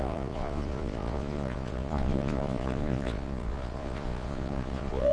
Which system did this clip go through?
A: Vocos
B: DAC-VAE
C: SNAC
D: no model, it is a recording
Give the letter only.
A